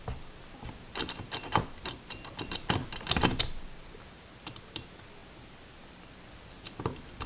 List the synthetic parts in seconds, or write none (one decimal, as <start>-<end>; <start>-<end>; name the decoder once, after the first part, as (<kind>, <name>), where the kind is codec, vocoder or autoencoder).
none